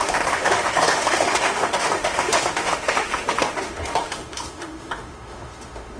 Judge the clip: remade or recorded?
remade